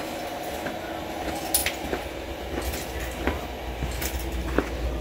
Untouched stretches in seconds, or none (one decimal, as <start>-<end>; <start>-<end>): 0.0-5.0